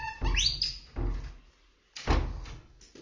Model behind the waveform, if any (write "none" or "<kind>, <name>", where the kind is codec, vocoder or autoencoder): none